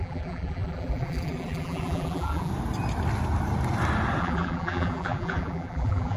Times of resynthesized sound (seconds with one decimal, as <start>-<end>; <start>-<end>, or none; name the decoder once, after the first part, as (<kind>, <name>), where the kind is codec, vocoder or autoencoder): 0.0-2.5 (vocoder, BigVGAN v2); 4.2-6.2